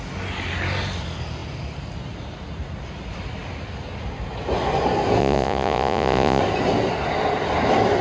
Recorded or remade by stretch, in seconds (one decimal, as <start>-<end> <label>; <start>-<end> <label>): 0.0-5.2 recorded; 5.2-6.4 remade; 6.4-8.0 recorded